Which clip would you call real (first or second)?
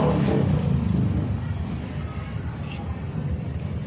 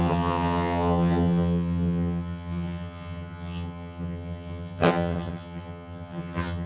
first